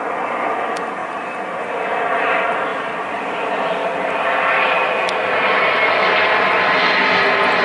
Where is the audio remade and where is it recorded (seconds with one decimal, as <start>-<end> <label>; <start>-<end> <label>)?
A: 0.0-2.7 recorded; 2.7-5.1 remade; 5.1-7.6 recorded